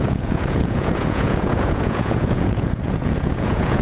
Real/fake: fake